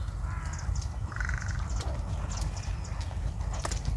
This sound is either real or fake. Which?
real